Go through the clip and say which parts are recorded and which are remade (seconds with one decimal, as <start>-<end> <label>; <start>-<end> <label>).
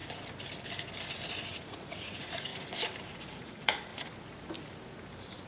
0.0-1.5 recorded; 1.5-2.5 remade; 2.5-3.1 recorded; 3.1-3.9 remade; 3.9-5.5 recorded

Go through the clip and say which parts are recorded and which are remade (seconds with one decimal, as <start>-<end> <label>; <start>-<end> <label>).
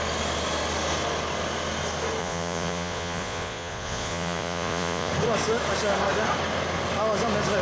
0.0-2.2 recorded; 2.2-5.1 remade; 5.1-7.6 recorded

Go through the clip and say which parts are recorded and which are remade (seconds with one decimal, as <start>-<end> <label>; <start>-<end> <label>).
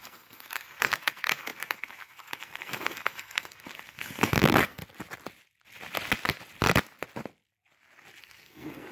0.0-4.8 remade; 4.8-8.2 recorded; 8.2-8.9 remade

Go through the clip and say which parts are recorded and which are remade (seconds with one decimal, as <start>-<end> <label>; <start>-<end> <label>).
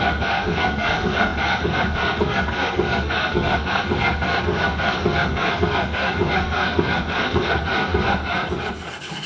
0.0-9.3 remade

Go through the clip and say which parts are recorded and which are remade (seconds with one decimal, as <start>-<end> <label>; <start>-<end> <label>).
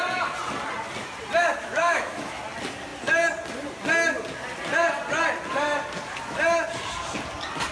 0.0-1.4 recorded; 1.4-2.4 remade; 2.4-7.7 recorded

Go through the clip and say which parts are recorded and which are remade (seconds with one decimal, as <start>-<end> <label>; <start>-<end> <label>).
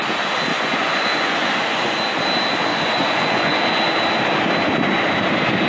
0.0-0.5 recorded; 0.5-2.0 remade; 2.0-2.7 recorded; 2.7-3.6 remade; 3.6-5.7 recorded